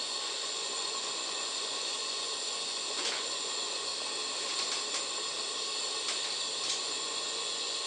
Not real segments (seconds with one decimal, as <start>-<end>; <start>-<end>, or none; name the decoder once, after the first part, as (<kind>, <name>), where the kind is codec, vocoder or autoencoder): 0.0-3.9 (vocoder, Vocos); 6.7-7.9